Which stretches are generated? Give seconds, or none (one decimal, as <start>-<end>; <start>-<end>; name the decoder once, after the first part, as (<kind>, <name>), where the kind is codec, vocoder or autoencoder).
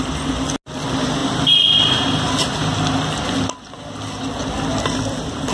none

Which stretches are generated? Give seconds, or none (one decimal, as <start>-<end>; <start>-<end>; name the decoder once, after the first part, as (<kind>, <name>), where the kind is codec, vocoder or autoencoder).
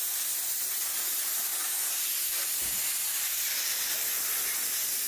none